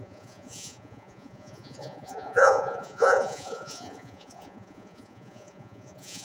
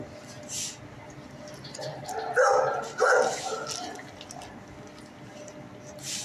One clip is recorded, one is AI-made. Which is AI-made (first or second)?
first